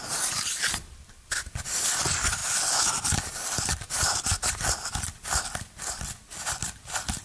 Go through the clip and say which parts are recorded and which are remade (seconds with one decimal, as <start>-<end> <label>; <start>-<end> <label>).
0.0-7.2 recorded